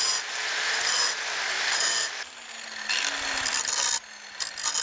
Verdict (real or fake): real